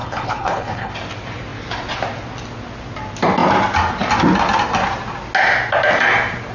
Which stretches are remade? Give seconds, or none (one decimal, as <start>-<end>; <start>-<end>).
0.0-0.9